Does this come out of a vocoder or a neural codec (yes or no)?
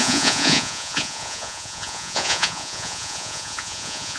yes